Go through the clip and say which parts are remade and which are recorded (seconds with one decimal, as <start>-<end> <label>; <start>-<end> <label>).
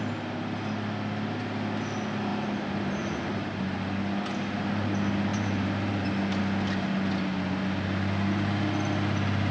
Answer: 0.0-2.3 recorded; 2.3-3.8 remade; 3.8-5.3 recorded; 5.3-6.4 remade; 6.4-9.5 recorded